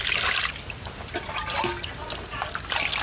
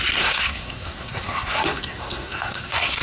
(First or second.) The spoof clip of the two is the second